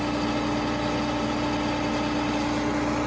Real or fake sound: real